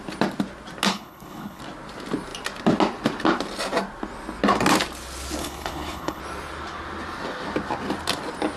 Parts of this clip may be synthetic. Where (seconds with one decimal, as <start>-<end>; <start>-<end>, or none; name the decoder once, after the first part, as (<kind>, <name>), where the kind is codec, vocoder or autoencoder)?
0.9-1.6 (codec, HILCodec); 5.4-6.2